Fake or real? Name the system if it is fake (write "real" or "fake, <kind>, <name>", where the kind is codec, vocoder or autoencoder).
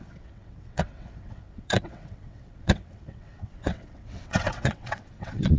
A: fake, vocoder, WaveNeXt